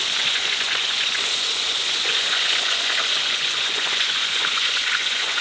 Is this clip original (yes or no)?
no